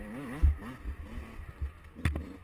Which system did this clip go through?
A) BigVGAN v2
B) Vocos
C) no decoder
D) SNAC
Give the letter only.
C